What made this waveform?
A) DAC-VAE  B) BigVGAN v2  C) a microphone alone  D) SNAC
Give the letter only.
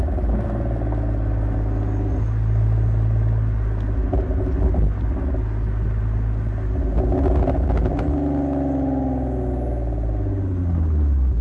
C